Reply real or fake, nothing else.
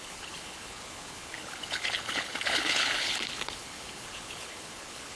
fake